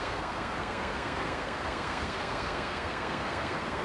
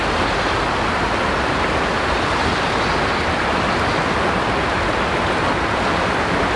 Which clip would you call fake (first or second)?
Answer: first